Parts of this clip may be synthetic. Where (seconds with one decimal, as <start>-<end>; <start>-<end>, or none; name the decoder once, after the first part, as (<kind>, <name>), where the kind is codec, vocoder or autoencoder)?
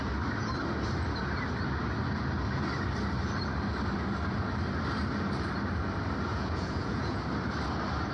6.3-7.2 (vocoder, Vocos)